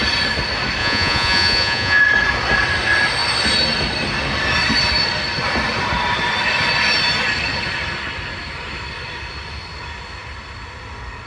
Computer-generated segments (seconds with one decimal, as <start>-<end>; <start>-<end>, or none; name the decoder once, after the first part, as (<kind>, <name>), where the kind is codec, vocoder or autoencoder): 0.8-2.0 (vocoder, Vocos)